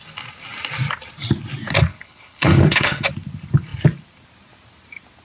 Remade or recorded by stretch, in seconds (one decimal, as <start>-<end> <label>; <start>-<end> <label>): 0.0-1.9 recorded; 1.9-3.1 remade; 3.1-5.2 recorded